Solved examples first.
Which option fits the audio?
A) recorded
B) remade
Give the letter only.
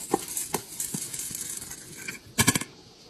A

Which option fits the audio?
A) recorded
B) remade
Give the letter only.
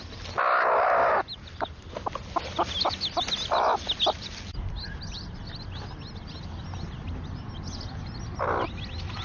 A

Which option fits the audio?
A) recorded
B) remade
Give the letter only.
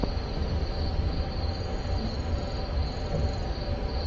A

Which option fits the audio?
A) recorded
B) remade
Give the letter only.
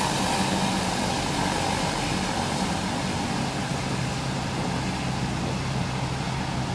A